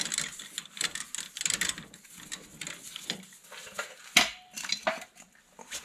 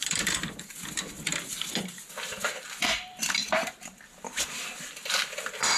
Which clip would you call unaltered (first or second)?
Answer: first